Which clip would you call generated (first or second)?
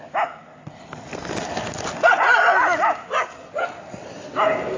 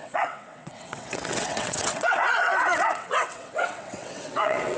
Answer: second